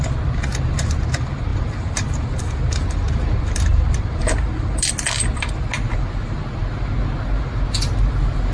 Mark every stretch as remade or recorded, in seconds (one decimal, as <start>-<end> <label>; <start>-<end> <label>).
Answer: 0.0-0.5 recorded; 0.5-1.0 remade; 1.0-1.5 recorded; 1.5-4.9 remade; 4.9-8.5 recorded